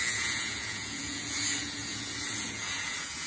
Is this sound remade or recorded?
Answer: remade